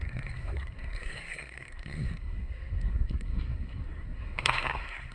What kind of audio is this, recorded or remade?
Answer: remade